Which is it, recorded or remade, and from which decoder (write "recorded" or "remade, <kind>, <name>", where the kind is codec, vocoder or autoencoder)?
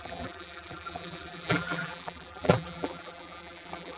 remade, vocoder, BigVGAN v2